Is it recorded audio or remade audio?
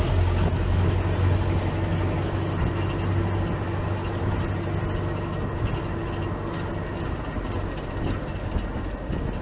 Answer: recorded